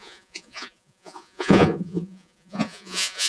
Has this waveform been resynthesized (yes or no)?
yes